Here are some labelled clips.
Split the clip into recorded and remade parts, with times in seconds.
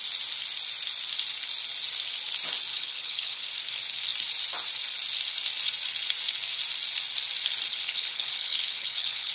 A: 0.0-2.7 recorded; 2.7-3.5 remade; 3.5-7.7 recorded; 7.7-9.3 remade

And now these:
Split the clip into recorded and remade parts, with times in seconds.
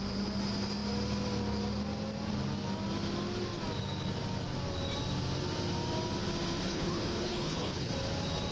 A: 0.0-6.7 recorded; 6.7-7.9 remade; 7.9-8.5 recorded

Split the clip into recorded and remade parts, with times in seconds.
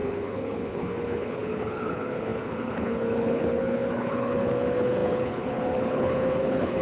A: 0.0-6.8 remade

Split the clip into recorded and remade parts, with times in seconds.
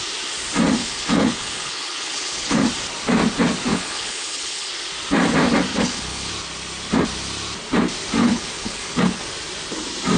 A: 0.0-0.8 recorded; 0.8-2.6 remade; 2.6-3.7 recorded; 3.7-4.7 remade; 4.7-5.7 recorded; 5.7-6.3 remade; 6.3-8.2 recorded; 8.2-9.2 remade; 9.2-10.2 recorded